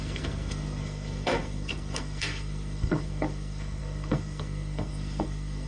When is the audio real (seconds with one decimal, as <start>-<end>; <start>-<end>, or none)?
none